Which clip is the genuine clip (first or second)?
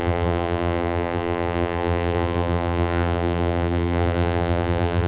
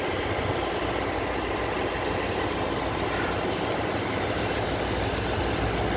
second